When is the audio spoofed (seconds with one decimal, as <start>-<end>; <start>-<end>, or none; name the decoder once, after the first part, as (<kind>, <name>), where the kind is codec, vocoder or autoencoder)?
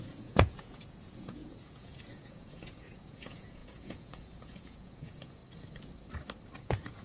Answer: 0.0-5.4 (vocoder, Vocos); 6.6-7.0